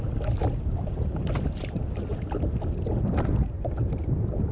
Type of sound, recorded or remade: recorded